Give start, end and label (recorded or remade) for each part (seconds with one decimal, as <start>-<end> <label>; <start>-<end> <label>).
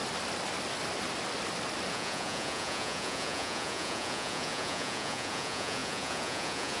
0.0-1.9 recorded; 1.9-6.8 remade